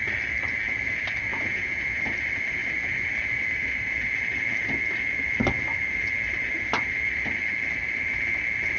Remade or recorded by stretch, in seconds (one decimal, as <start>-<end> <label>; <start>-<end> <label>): 0.0-1.3 recorded; 1.3-2.0 remade; 2.0-8.8 recorded